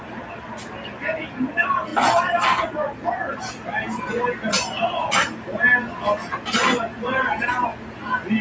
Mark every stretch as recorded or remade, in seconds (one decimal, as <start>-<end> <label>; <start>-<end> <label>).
0.0-8.4 recorded